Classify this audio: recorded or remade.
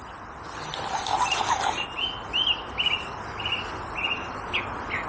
recorded